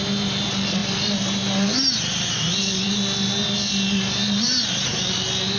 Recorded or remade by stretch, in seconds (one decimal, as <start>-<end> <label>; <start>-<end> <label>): 0.0-5.6 recorded